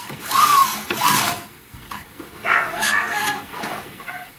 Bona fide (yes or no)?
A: no